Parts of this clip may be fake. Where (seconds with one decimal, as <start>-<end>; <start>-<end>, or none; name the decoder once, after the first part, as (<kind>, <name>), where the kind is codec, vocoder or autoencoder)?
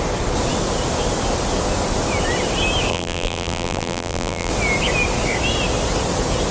2.9-4.5 (vocoder, BigVGAN v2)